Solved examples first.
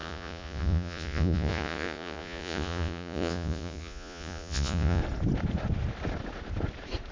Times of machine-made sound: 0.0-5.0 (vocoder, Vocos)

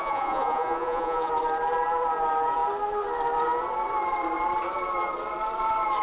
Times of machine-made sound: 0.0-1.3 (vocoder, Vocos)

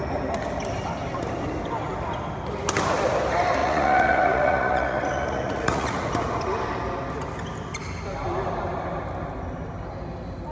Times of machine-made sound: 3.6-6.1 (vocoder, Vocos)